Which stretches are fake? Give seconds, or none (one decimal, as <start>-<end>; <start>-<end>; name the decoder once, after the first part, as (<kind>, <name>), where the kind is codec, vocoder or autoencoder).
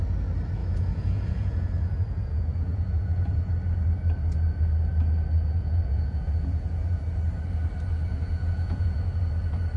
0.6-3.5 (vocoder, Vocos); 5.6-7.0; 8.1-9.0